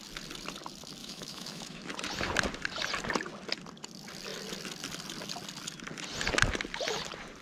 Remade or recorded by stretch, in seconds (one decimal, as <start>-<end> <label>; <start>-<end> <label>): 0.0-1.0 recorded; 1.0-1.9 remade; 1.9-7.4 recorded